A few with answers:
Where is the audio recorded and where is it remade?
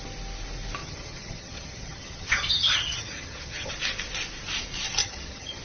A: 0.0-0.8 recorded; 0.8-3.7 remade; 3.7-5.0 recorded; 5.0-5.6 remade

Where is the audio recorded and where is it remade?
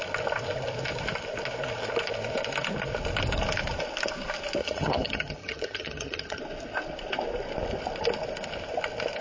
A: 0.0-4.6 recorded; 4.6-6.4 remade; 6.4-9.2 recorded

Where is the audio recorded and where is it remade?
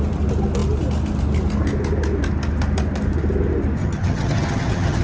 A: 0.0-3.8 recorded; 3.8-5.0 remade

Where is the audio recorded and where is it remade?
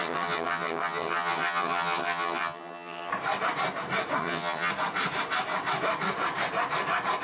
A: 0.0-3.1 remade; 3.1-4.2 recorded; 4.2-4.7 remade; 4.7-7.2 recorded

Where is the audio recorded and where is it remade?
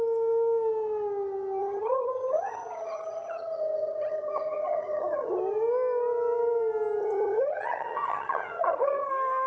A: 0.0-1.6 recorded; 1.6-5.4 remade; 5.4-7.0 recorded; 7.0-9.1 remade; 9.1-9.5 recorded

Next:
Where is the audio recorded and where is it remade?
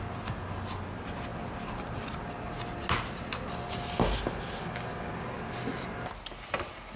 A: 0.0-7.0 recorded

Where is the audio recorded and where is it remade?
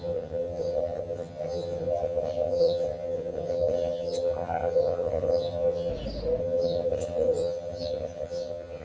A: 0.0-5.9 remade; 5.9-6.4 recorded; 6.4-8.8 remade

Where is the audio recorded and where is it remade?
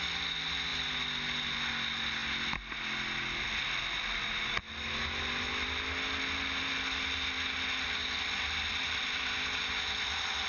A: 0.0-10.5 recorded